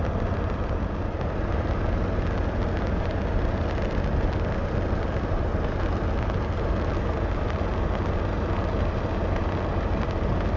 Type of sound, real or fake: real